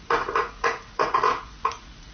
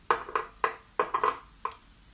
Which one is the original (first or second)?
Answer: second